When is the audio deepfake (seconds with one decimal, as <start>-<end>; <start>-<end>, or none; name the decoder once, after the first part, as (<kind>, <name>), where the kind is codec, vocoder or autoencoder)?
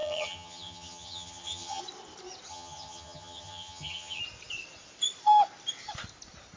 0.0-1.8 (vocoder, HiFi-GAN); 2.5-4.2